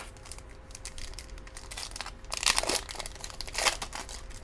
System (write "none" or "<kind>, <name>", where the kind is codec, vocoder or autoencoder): none